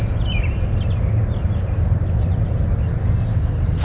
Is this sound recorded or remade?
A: recorded